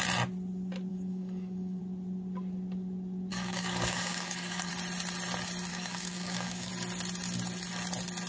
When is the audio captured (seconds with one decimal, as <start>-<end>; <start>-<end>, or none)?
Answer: 0.0-0.9; 1.8-3.3; 4.7-5.7; 6.7-8.3